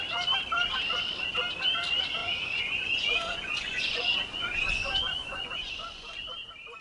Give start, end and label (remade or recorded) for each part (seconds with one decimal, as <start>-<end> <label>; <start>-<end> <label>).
0.0-2.2 recorded; 2.2-6.3 remade; 6.3-6.8 recorded